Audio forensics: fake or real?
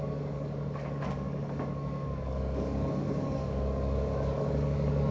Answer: fake